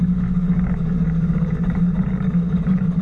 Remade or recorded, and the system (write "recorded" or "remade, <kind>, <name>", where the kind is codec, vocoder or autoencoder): remade, codec, DAC